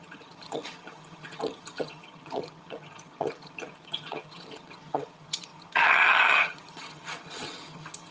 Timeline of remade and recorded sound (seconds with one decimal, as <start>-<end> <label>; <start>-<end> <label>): 0.0-8.1 remade